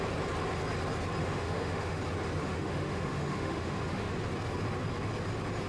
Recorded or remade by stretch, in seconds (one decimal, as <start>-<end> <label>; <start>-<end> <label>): 0.0-1.2 recorded; 1.2-2.0 remade; 2.0-2.4 recorded; 2.4-4.1 remade; 4.1-5.7 recorded

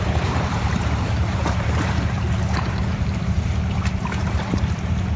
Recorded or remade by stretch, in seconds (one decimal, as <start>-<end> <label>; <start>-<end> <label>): 0.0-3.5 remade; 3.5-4.2 recorded; 4.2-5.2 remade

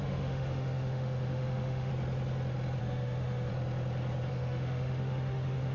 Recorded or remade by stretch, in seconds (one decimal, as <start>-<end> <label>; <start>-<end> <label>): 0.0-1.9 remade; 1.9-2.8 recorded; 2.8-3.5 remade; 3.5-4.3 recorded; 4.3-5.7 remade

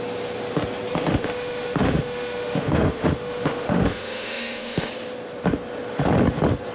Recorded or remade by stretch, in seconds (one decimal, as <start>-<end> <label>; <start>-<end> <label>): 0.0-0.9 recorded; 0.9-4.9 remade; 4.9-6.7 recorded

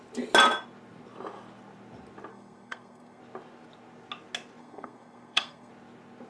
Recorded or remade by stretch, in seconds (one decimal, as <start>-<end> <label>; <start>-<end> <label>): 0.0-2.3 recorded; 2.3-3.2 remade; 3.2-4.6 recorded; 4.6-5.7 remade; 5.7-6.3 recorded

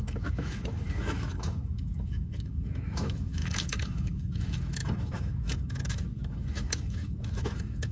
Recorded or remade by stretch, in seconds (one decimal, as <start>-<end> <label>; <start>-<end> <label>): 0.0-7.9 remade

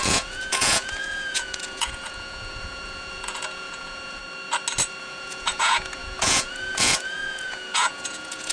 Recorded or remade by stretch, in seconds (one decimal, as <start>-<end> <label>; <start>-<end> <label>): 0.0-4.2 remade; 4.2-5.0 recorded; 5.0-8.5 remade